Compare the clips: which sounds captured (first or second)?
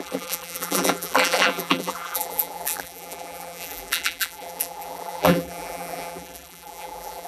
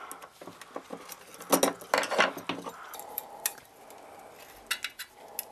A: second